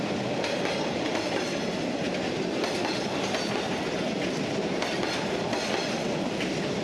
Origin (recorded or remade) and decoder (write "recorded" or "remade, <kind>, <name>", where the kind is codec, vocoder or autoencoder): recorded